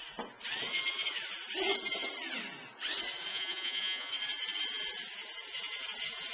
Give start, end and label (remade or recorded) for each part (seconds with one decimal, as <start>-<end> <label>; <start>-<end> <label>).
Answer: 0.0-3.3 recorded; 3.3-4.1 remade; 4.1-6.3 recorded